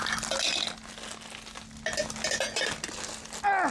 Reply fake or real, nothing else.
real